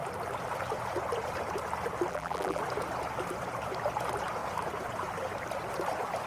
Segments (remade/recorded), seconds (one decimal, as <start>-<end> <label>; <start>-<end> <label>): 0.0-2.1 recorded; 2.1-2.6 remade; 2.6-6.3 recorded